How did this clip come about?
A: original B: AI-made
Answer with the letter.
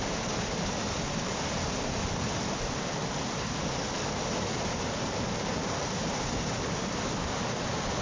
A